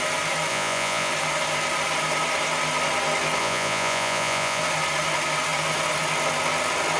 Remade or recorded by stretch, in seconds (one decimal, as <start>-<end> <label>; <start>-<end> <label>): 0.0-0.5 recorded; 0.5-1.1 remade; 1.1-3.4 recorded; 3.4-4.6 remade; 4.6-7.0 recorded